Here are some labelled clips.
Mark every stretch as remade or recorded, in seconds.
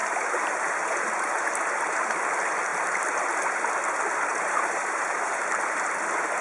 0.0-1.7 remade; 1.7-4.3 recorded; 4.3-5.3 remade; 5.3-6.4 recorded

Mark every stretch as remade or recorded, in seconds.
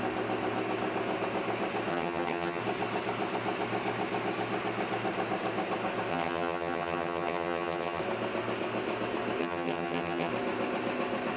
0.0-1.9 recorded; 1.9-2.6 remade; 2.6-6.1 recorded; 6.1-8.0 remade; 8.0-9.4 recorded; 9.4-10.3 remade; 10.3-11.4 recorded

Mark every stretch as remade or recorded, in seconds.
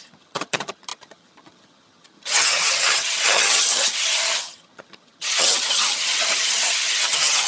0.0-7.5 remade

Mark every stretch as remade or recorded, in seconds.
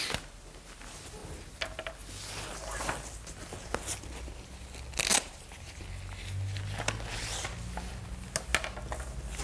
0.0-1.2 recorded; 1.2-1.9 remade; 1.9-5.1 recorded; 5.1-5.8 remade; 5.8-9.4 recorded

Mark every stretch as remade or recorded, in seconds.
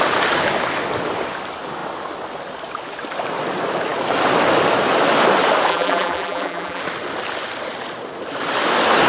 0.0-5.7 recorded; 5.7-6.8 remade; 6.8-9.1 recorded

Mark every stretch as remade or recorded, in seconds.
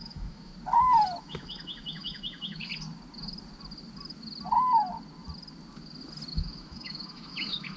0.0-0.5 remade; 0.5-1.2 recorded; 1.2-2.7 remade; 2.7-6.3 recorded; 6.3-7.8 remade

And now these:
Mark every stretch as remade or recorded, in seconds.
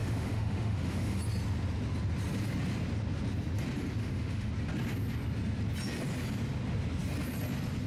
0.0-1.2 remade; 1.2-4.0 recorded; 4.0-4.5 remade; 4.5-7.9 recorded